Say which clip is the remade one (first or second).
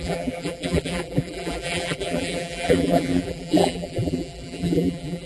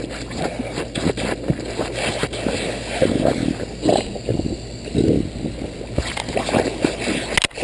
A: first